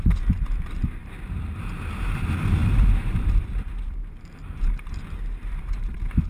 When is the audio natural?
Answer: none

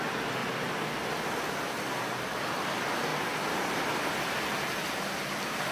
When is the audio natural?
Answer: 0.0-5.7

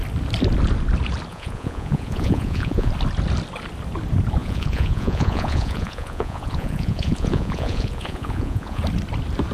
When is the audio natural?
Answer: 0.0-1.3; 2.9-4.4; 8.8-9.5

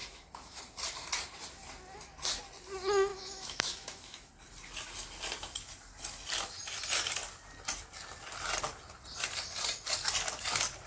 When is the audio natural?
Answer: 0.6-3.1; 4.3-10.9

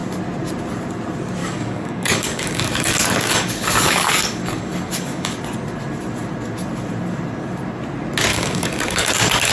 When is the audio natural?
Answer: 0.0-1.4; 5.4-8.3